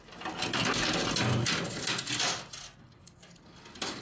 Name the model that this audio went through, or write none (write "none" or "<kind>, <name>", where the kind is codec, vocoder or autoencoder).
none